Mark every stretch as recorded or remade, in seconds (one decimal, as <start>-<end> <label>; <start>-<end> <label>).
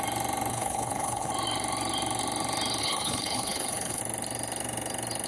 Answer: 0.0-0.5 recorded; 0.5-1.3 remade; 1.3-2.8 recorded; 2.8-4.0 remade; 4.0-5.3 recorded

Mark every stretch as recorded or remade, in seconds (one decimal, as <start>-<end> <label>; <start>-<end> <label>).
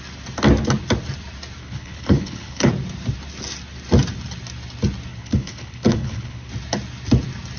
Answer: 0.0-1.6 recorded; 1.6-2.7 remade; 2.7-5.1 recorded; 5.1-6.5 remade; 6.5-7.6 recorded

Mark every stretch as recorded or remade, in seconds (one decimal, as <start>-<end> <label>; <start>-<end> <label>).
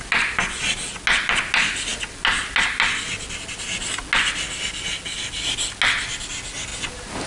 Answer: 0.0-7.3 recorded